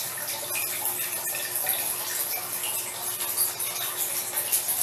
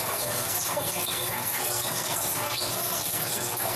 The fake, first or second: second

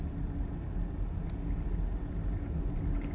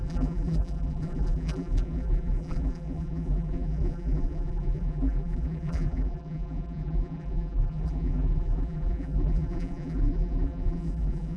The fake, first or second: second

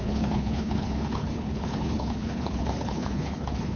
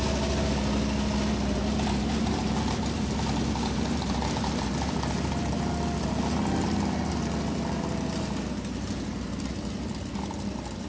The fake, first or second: first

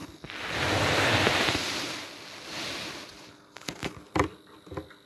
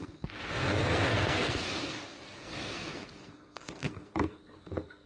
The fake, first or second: second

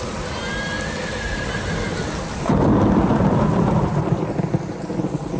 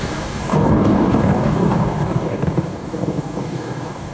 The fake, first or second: second